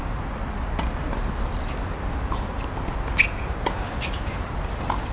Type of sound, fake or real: real